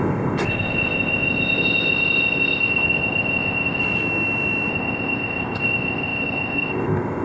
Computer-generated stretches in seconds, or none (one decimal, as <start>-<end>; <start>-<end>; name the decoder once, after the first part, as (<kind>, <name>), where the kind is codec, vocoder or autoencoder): 0.0-3.8 (codec, ZipCodec); 4.7-7.2